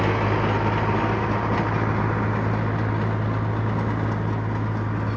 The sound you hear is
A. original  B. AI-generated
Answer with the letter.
A